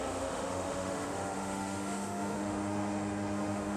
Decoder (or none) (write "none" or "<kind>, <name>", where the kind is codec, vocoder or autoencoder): autoencoder, DAC-VAE